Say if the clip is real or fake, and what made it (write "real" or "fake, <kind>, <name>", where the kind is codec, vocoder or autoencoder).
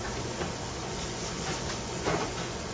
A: fake, vocoder, Vocos